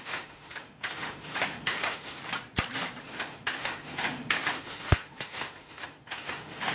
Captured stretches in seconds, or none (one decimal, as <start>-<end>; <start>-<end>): 2.2-3.0